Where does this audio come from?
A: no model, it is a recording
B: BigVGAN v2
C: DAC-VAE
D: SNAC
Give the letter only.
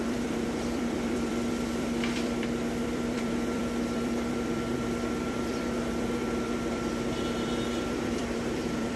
B